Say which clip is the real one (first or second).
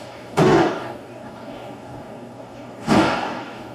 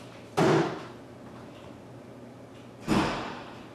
second